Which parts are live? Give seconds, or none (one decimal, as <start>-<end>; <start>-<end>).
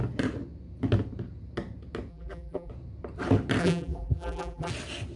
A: 0.0-2.1; 2.7-3.6; 4.7-5.2